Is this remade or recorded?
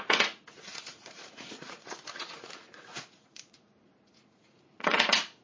remade